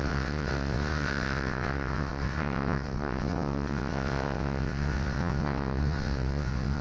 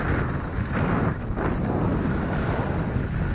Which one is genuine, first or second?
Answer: second